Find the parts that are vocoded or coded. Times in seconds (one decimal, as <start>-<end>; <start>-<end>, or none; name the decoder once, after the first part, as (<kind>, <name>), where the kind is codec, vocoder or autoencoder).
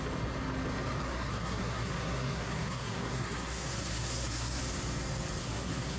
1.0-4.6 (codec, SNAC); 5.4-6.0